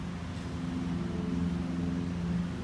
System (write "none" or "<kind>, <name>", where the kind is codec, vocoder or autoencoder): none